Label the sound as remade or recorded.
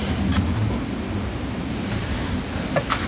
recorded